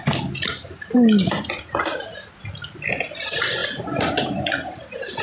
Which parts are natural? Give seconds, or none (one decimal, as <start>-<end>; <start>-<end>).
0.0-0.6; 1.4-3.6